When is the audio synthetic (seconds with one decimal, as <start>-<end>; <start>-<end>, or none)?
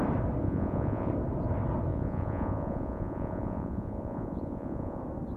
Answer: 0.4-1.1; 1.9-5.0